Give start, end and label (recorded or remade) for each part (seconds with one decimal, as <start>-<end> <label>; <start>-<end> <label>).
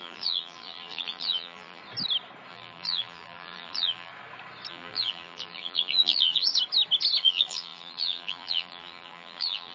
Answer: 0.0-1.8 remade; 1.8-2.5 recorded; 2.5-4.1 remade; 4.1-4.7 recorded; 4.7-6.5 remade; 6.5-7.2 recorded; 7.2-9.7 remade